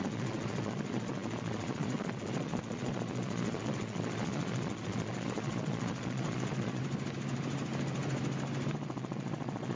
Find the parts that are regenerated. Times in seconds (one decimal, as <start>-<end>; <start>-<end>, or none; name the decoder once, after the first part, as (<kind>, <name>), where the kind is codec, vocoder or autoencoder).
0.0-6.8 (vocoder, Vocos); 8.7-9.8